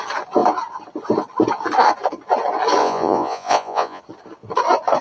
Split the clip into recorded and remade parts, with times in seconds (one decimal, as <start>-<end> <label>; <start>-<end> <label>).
0.0-2.8 recorded; 2.8-4.0 remade; 4.0-5.0 recorded